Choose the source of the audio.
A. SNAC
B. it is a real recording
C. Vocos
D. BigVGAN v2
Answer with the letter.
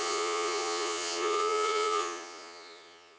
C